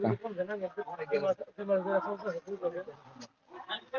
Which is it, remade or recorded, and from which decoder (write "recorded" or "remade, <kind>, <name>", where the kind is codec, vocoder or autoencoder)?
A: recorded